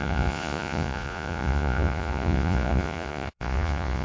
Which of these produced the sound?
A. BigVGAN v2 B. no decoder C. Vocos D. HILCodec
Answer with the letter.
C